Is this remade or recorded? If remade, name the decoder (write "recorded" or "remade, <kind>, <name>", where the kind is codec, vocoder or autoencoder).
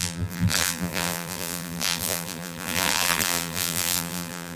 remade, vocoder, BigVGAN v2